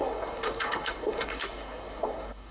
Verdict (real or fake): fake